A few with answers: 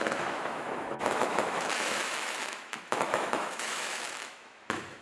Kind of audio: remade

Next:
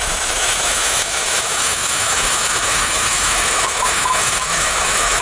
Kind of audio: remade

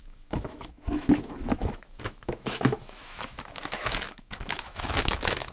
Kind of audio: remade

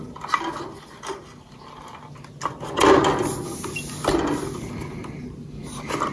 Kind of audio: recorded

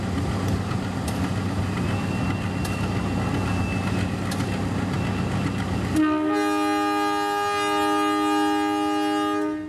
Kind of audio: recorded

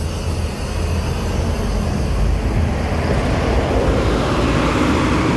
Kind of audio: recorded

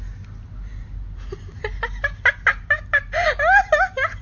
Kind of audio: recorded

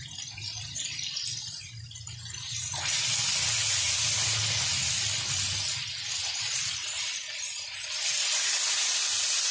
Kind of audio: recorded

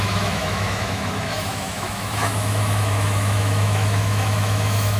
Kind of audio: remade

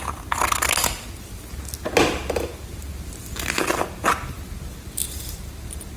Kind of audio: recorded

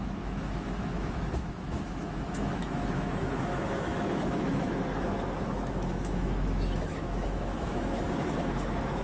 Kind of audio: remade